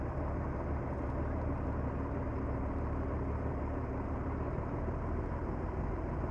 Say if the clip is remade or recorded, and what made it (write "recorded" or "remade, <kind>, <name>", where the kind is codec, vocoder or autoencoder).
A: remade, vocoder, BigVGAN v2